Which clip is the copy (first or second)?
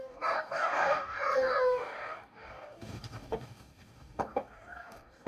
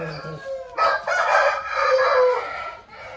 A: first